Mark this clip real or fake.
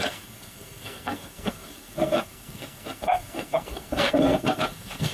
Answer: fake